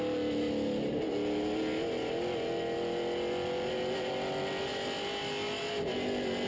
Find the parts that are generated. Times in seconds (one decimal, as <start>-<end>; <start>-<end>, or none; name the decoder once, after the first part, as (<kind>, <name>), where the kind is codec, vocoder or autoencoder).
none